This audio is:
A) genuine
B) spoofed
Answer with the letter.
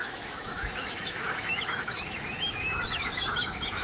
B